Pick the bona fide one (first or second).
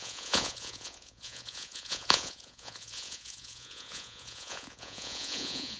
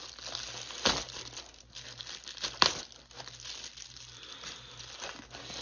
second